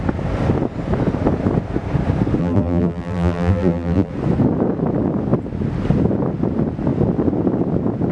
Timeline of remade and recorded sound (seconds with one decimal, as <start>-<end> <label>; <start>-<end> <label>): 0.0-2.4 recorded; 2.4-4.1 remade; 4.1-8.1 recorded